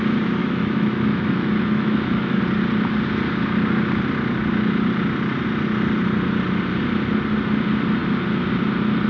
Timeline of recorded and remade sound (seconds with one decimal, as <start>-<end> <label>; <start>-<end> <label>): 0.0-0.4 recorded; 0.4-2.4 remade; 2.4-9.1 recorded